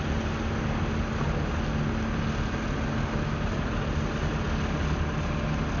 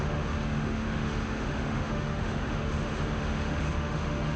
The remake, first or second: second